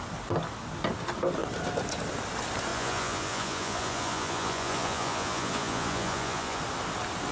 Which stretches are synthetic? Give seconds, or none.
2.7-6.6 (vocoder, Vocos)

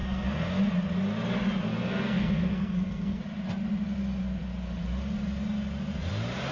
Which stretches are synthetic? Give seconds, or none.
0.0-0.6 (codec, SNAC); 1.7-3.2

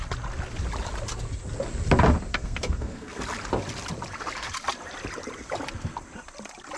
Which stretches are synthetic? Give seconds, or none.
2.3-3.2 (codec, SNAC)

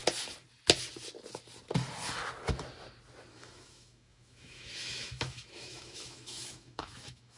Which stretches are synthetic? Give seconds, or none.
3.3-7.4 (autoencoder, DAC-VAE)

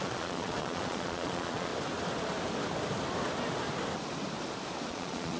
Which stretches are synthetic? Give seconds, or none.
0.0-1.7 (vocoder, Vocos); 4.9-5.4

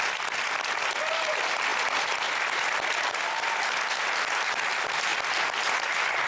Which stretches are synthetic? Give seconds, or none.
none

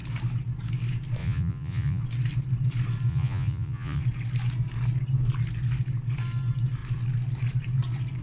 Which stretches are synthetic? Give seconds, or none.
1.2-2.0 (vocoder, Vocos); 3.1-4.0

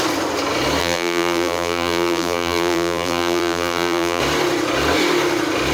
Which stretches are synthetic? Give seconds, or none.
0.8-4.2 (vocoder, BigVGAN v2)